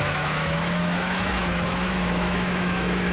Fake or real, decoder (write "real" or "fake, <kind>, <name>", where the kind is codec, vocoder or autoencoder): fake, autoencoder, DAC-VAE